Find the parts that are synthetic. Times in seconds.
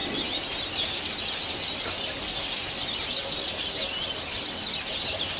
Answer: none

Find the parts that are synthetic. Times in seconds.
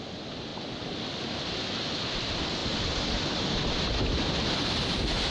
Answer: none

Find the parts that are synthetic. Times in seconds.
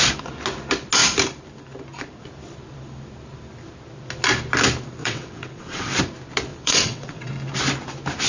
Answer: 5.0-6.0 (vocoder, WaveNeXt); 6.5-7.3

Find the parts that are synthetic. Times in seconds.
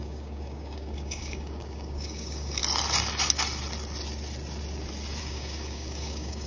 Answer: 0.0-2.6 (codec, DAC); 5.2-6.5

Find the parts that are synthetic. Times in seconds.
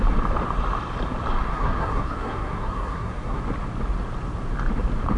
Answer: 1.5-3.4 (codec, SNAC)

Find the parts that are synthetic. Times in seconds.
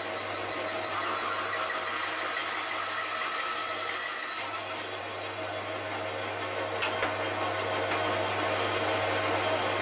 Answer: none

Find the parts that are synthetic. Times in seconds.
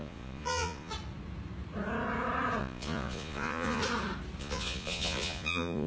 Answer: 0.0-0.9 (vocoder, Vocos); 2.6-3.8; 4.4-5.9